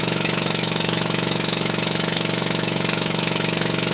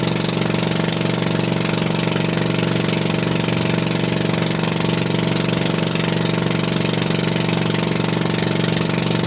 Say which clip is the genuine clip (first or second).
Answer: second